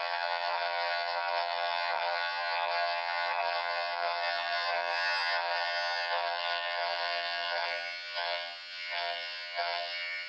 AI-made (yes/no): yes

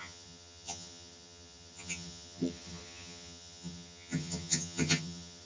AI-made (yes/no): yes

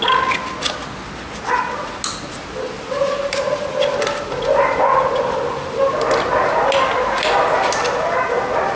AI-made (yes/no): no